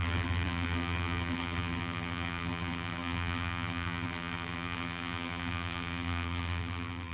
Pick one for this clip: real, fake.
fake